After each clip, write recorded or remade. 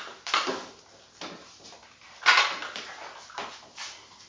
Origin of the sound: recorded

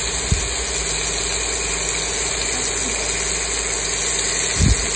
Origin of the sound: recorded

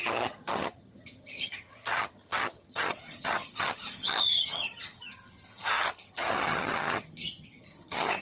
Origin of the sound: remade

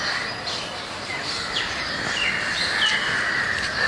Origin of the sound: recorded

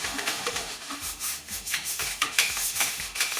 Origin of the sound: remade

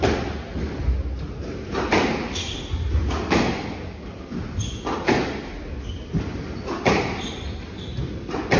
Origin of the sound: recorded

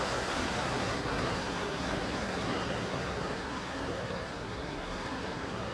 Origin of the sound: remade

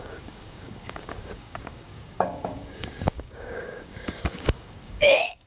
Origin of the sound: remade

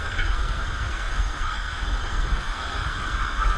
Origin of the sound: remade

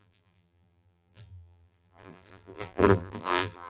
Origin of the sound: remade